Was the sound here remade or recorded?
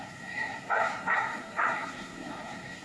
remade